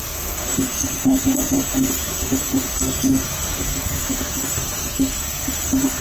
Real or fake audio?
fake